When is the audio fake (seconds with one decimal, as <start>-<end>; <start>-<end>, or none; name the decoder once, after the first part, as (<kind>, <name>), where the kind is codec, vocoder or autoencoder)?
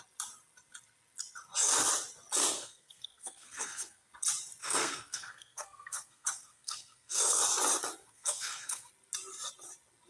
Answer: 2.5-4.1 (codec, SNAC); 4.6-7.4; 8.0-8.9